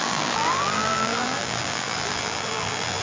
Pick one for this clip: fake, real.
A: fake